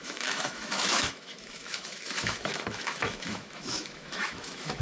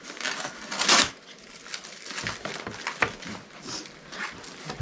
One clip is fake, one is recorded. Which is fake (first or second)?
first